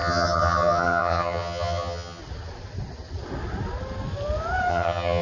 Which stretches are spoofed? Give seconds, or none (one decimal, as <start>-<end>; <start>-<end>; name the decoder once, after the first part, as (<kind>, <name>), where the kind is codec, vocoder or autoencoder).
0.0-2.2 (vocoder, HiFi-GAN); 4.7-5.2